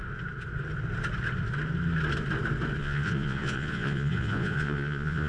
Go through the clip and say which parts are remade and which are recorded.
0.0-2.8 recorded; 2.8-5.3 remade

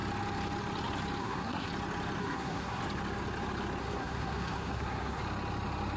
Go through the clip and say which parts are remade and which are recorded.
0.0-1.2 recorded; 1.2-1.7 remade; 1.7-2.2 recorded; 2.2-2.8 remade; 2.8-3.8 recorded; 3.8-5.2 remade; 5.2-6.0 recorded

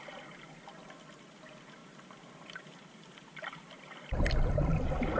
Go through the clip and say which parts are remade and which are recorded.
0.0-1.8 recorded; 1.8-5.2 remade

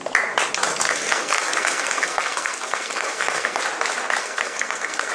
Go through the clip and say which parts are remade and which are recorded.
0.0-0.7 recorded; 0.7-3.6 remade; 3.6-4.2 recorded; 4.2-5.1 remade